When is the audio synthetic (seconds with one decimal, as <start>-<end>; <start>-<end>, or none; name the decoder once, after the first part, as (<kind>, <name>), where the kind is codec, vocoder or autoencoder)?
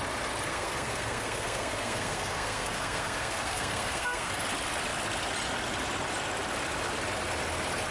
0.5-4.3 (codec, SNAC)